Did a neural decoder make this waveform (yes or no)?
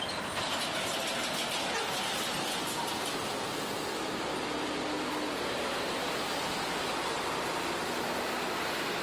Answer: no